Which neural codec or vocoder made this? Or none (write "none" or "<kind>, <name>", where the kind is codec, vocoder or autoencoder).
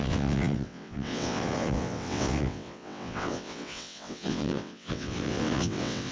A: vocoder, WaveNeXt